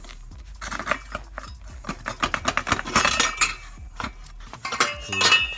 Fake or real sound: real